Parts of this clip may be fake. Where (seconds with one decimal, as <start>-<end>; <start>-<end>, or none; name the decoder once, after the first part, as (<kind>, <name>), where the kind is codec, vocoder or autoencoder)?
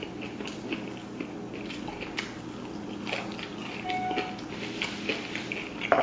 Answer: none